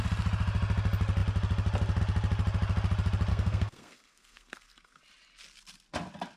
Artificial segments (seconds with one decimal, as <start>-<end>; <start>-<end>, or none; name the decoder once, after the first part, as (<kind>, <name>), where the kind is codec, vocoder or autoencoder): 3.3-5.0 (codec, SNAC)